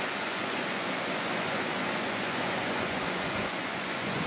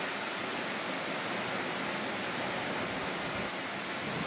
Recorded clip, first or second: second